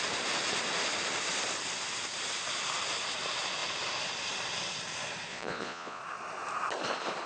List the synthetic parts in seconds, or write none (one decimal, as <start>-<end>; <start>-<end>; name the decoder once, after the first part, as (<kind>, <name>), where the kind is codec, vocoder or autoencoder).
5.3-6.0 (vocoder, Vocos)